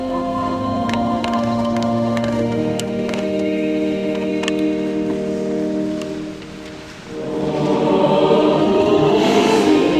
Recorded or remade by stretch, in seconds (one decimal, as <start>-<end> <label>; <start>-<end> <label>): 0.0-4.3 remade; 4.3-8.6 recorded; 8.6-10.0 remade